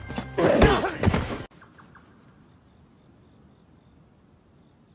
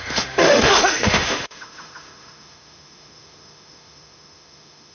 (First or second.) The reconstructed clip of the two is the second